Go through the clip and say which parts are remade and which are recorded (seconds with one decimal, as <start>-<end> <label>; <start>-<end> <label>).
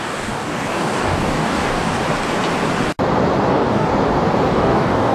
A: 0.0-2.0 remade; 2.0-3.5 recorded; 3.5-3.9 remade; 3.9-4.5 recorded; 4.5-5.1 remade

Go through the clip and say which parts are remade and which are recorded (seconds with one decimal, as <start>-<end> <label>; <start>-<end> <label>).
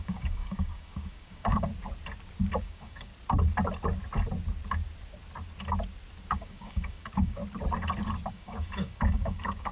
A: 0.0-1.7 remade; 1.7-2.6 recorded; 2.6-3.1 remade; 3.1-6.3 recorded; 6.3-7.4 remade; 7.4-8.3 recorded; 8.3-9.7 remade